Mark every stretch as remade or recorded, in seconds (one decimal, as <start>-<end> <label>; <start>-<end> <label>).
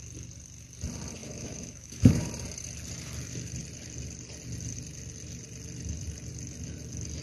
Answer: 0.0-1.2 recorded; 1.2-2.3 remade; 2.3-7.2 recorded